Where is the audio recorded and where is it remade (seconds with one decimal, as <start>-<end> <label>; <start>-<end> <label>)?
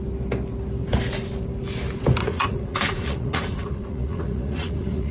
0.0-2.2 recorded; 2.2-5.1 remade